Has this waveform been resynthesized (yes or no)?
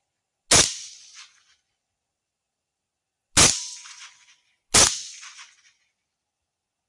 no